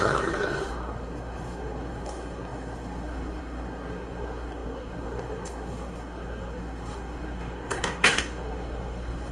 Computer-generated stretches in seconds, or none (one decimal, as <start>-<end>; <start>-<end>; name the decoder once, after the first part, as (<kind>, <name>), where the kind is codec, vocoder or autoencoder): 0.0-9.3 (codec, SNAC)